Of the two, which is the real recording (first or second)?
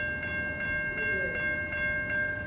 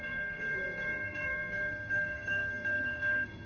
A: first